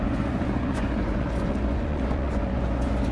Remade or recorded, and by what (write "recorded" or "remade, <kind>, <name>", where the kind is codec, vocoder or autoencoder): remade, vocoder, Vocos